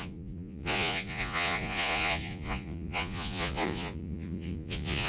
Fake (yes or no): yes